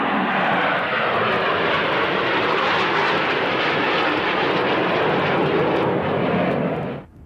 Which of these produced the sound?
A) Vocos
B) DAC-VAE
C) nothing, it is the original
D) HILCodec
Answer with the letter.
C